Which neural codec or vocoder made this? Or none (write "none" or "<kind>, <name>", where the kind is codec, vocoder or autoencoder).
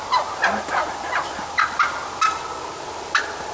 none